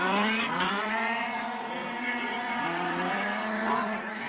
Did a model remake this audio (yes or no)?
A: yes